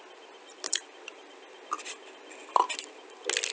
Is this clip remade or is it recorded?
recorded